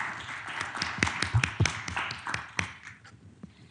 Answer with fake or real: real